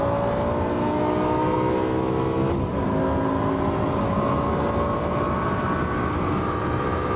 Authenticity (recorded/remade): recorded